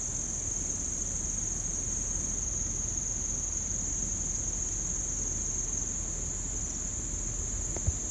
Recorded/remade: recorded